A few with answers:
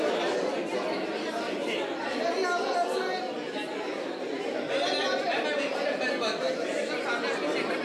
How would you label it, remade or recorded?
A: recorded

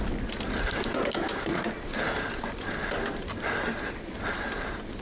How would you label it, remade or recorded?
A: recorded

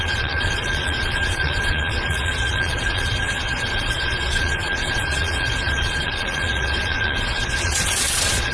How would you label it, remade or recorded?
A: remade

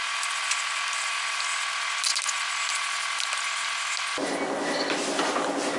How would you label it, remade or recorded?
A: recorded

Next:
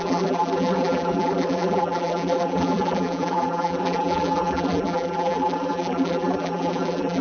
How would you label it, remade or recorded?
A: remade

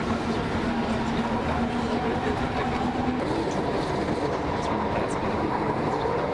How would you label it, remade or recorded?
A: recorded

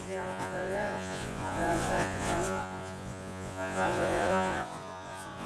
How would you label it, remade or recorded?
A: remade